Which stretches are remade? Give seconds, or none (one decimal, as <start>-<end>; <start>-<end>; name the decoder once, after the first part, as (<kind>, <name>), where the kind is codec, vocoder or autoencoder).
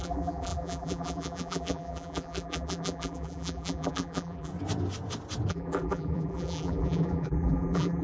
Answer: 0.0-4.5 (vocoder, BigVGAN v2); 5.5-8.0